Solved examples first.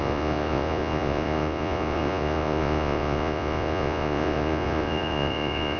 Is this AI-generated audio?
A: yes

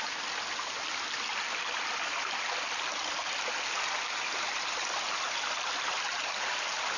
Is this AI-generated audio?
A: no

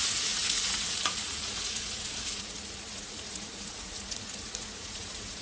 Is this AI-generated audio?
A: yes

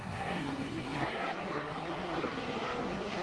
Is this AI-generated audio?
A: yes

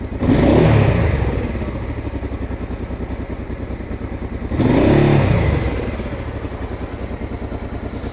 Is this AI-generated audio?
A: no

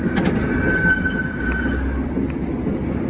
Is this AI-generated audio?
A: no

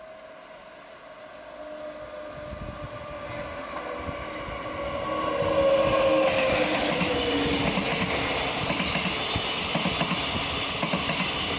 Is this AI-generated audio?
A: no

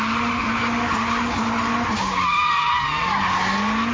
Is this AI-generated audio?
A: no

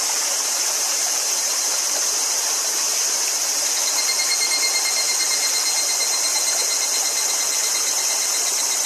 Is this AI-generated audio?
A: yes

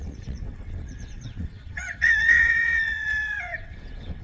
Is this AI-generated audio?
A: yes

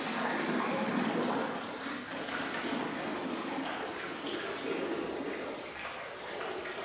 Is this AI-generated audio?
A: no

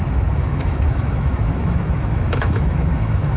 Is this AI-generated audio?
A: yes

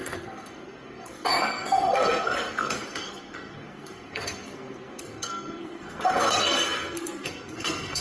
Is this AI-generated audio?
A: yes